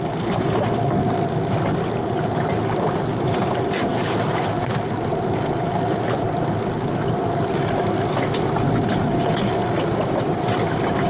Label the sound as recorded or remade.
recorded